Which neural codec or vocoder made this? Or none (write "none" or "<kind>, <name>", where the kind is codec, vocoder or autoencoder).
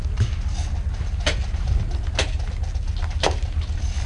none